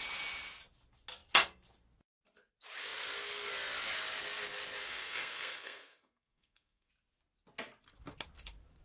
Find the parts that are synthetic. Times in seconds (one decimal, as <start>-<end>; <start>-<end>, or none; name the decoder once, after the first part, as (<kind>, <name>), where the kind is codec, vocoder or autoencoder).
4.8-6.9 (codec, SNAC)

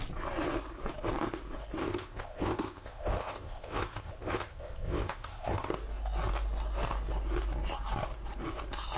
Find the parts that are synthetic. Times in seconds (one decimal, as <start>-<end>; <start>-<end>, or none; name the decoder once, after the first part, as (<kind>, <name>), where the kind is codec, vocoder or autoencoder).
1.8-5.7 (codec, ZipCodec)